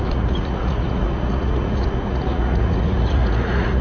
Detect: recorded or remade remade